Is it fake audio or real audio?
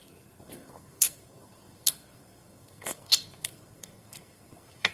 fake